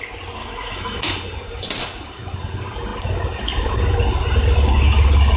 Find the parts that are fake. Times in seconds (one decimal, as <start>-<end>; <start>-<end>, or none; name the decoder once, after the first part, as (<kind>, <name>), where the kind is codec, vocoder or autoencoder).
0.4-1.1 (autoencoder, DAC-VAE)